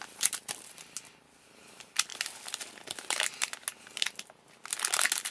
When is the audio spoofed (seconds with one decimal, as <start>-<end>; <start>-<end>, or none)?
none